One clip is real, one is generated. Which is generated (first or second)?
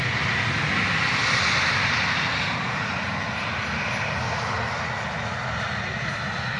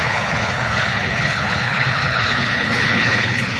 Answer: second